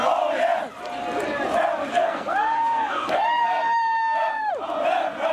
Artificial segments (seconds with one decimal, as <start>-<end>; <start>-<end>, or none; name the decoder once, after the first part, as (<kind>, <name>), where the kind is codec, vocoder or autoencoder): 1.9-4.5 (codec, SNAC)